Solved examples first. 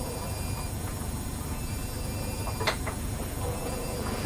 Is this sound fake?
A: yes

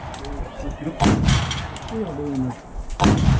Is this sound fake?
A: no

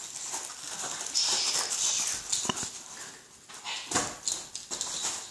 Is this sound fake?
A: no